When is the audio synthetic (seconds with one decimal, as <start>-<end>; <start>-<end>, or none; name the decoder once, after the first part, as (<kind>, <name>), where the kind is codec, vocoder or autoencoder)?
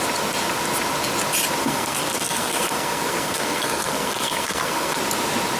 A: 1.6-5.0 (codec, SNAC)